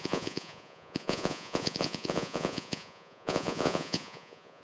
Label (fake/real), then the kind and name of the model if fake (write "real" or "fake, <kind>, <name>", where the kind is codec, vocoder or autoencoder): fake, vocoder, Vocos